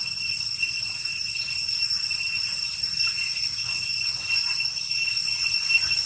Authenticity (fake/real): real